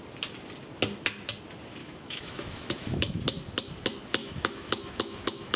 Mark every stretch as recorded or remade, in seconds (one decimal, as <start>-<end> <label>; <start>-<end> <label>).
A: 0.0-1.8 recorded; 1.8-3.2 remade; 3.2-4.2 recorded; 4.2-5.6 remade